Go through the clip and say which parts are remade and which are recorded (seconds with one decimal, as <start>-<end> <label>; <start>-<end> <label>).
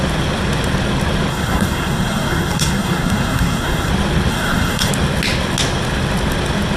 0.0-1.3 recorded; 1.3-3.9 remade; 3.9-4.3 recorded; 4.3-4.9 remade; 4.9-6.8 recorded